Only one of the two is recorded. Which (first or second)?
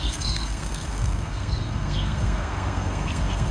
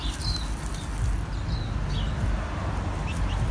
second